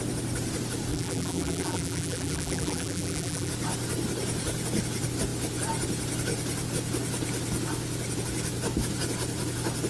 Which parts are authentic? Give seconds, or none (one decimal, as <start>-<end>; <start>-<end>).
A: 0.0-0.9; 3.5-9.9